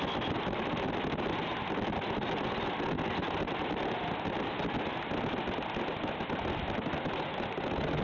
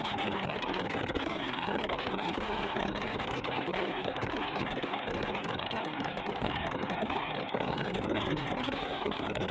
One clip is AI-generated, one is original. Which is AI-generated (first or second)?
second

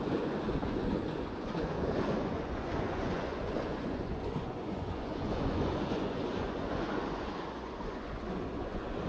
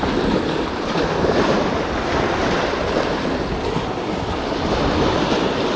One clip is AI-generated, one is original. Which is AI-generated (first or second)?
first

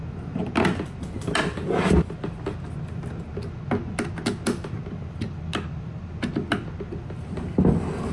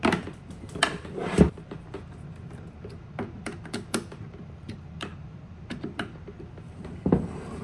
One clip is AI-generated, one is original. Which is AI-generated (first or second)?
second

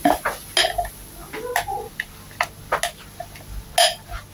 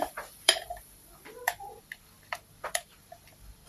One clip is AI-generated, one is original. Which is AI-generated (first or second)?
second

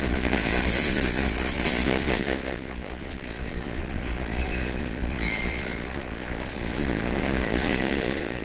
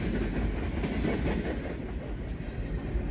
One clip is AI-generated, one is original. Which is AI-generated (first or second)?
first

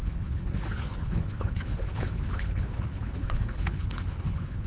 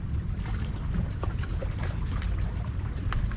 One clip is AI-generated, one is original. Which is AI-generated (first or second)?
first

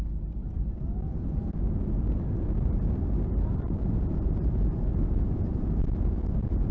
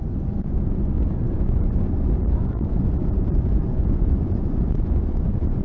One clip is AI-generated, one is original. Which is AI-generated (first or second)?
second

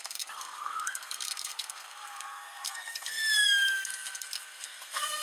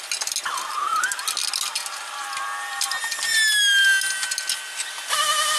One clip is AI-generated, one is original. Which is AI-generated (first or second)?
first